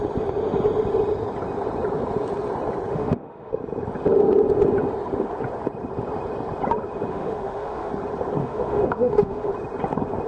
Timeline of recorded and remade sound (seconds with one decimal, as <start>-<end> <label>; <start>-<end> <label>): 0.0-2.9 recorded; 2.9-3.5 remade; 3.5-7.1 recorded; 7.1-7.9 remade; 7.9-8.4 recorded; 8.4-9.5 remade; 9.5-10.3 recorded